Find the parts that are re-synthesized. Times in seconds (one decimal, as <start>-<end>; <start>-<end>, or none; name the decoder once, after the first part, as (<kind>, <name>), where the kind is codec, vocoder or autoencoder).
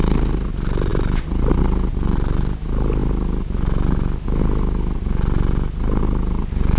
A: none